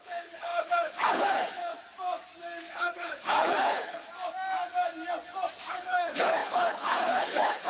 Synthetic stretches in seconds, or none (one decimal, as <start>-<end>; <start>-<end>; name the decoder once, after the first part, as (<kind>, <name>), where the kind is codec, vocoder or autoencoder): 0.0-1.7 (codec, HILCodec); 2.7-4.0; 5.7-7.7